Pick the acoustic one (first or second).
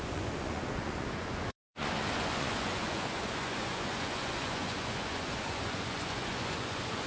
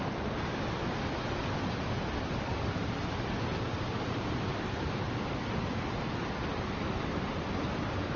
second